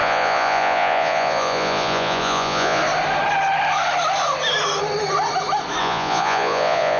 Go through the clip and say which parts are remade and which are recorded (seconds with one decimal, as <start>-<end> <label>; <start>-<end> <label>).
0.0-2.8 remade; 2.8-5.8 recorded; 5.8-7.0 remade